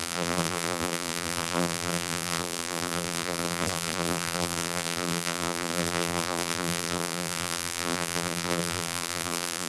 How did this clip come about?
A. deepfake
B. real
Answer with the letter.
A